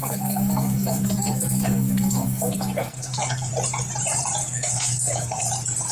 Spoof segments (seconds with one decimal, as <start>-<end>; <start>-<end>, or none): 0.0-3.5; 4.4-5.4